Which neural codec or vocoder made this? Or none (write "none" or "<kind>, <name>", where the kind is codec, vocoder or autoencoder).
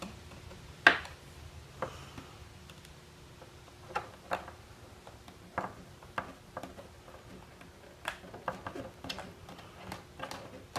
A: none